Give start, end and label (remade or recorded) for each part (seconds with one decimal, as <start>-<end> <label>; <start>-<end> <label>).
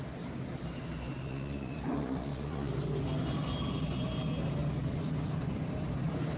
0.0-1.2 recorded; 1.2-2.7 remade; 2.7-6.4 recorded